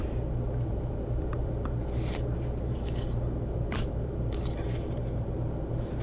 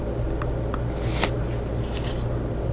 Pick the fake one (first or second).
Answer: first